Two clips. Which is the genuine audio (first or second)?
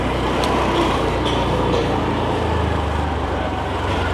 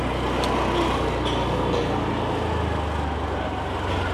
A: second